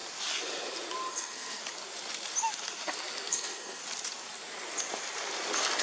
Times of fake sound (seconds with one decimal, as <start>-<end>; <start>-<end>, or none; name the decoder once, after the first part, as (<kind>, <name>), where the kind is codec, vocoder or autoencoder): 1.1-1.6 (codec, SNAC); 3.3-3.8